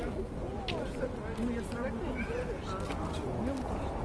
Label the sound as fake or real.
real